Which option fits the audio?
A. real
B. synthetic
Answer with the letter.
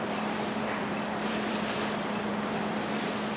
B